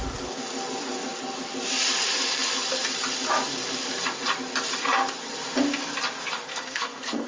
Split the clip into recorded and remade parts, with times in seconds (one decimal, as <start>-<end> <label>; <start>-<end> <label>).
0.0-6.5 recorded; 6.5-7.3 remade